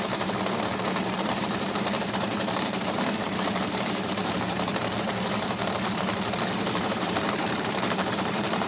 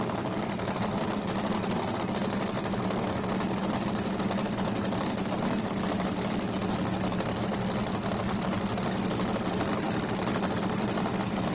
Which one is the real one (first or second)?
second